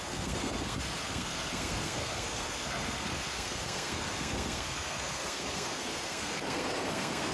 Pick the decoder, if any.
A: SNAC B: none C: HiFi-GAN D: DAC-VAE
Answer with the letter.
A